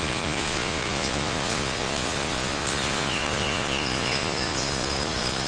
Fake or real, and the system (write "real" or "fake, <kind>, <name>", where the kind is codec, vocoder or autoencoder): fake, vocoder, Vocos